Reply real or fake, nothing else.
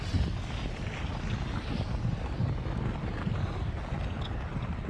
real